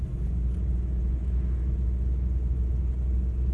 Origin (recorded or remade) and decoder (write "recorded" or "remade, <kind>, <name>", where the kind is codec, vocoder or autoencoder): recorded